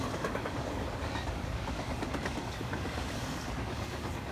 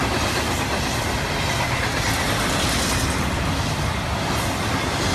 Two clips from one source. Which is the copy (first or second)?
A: first